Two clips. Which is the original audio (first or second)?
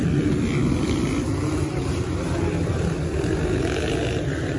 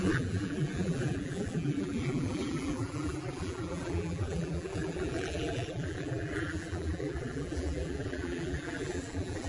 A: first